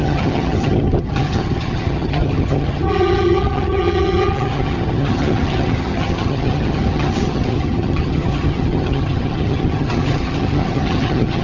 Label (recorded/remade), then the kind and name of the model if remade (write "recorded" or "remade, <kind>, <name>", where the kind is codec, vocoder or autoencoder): remade, vocoder, HiFi-GAN